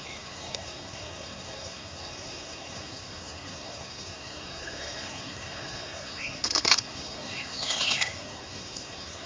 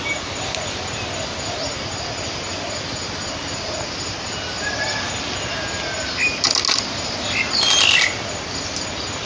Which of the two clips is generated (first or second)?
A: first